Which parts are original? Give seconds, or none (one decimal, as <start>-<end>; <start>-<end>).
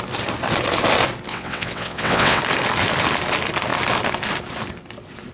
0.0-1.3; 2.4-5.3